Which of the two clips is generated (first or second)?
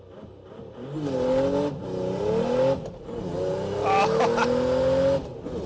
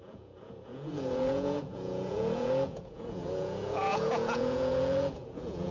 second